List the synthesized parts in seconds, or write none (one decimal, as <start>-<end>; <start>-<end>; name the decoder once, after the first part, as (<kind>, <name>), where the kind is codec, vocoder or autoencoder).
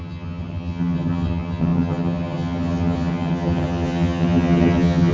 0.0-5.1 (vocoder, HiFi-GAN)